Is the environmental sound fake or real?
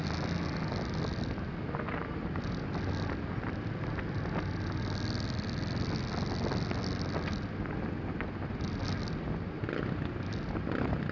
real